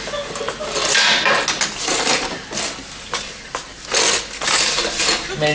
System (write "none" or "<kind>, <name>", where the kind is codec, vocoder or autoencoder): none